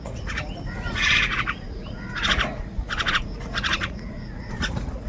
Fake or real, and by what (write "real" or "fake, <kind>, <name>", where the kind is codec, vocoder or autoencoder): fake, vocoder, Vocos